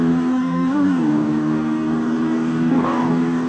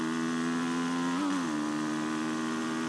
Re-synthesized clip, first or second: first